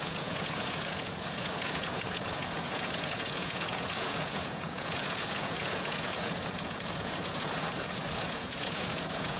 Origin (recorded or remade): remade